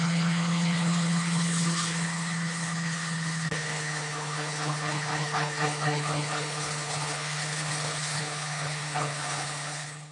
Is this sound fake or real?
fake